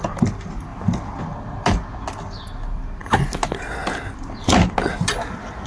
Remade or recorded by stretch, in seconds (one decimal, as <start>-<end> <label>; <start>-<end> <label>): 0.0-5.7 recorded